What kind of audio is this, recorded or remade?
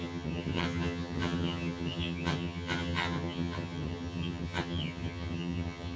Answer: remade